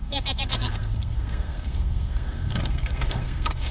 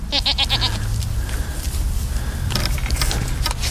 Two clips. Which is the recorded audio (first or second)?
second